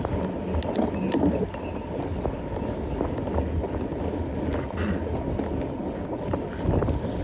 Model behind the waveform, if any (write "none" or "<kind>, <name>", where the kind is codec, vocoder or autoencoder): none